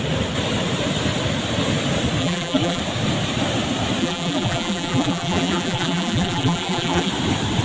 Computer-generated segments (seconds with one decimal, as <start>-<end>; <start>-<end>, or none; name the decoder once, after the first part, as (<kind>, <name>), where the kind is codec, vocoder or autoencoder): 2.2-2.8 (vocoder, BigVGAN v2); 4.0-7.1